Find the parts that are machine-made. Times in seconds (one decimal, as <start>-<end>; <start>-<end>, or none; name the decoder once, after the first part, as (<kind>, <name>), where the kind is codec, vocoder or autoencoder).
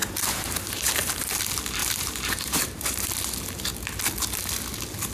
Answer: 0.0-1.4 (vocoder, BigVGAN v2); 1.8-2.7